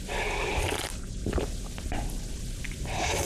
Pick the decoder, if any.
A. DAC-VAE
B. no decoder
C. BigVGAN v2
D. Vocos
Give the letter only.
B